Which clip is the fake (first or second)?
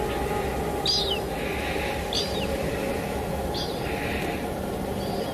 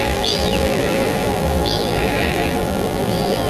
second